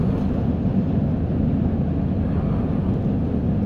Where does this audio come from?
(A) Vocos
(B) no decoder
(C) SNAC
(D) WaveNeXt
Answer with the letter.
B